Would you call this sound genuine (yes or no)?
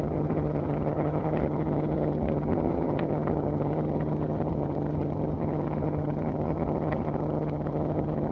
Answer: no